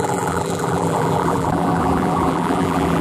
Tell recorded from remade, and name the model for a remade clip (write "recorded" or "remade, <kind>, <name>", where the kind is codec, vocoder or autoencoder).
remade, vocoder, BigVGAN v2